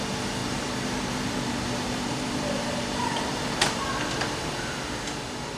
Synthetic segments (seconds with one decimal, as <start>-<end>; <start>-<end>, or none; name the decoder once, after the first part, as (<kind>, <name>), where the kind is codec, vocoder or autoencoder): 0.4-3.8 (vocoder, BigVGAN v2)